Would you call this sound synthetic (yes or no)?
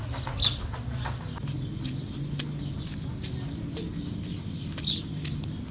no